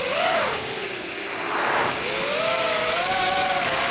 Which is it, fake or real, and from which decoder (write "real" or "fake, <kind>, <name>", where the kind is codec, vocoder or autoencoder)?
fake, codec, DAC